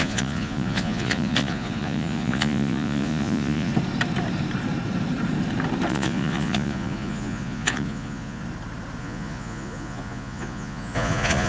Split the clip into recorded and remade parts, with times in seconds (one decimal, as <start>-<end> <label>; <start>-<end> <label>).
0.0-3.7 remade; 3.7-5.9 recorded; 5.9-8.4 remade; 8.4-9.0 recorded; 9.0-11.5 remade